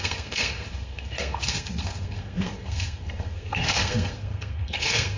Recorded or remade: remade